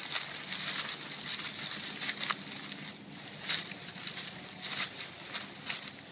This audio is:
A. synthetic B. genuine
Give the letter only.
B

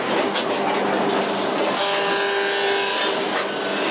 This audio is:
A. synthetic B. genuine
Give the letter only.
B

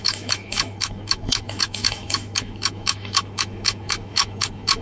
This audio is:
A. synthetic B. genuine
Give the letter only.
A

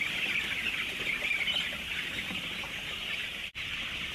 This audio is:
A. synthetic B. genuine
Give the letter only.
B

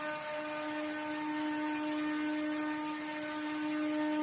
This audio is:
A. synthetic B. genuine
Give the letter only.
B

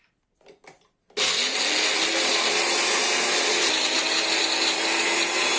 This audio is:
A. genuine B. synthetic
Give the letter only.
A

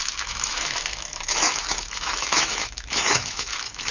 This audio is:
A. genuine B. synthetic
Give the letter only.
B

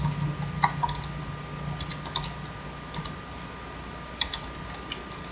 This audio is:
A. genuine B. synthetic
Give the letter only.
A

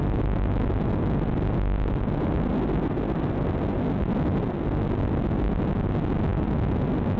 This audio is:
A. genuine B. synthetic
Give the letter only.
A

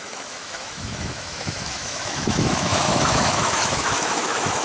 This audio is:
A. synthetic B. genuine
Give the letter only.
A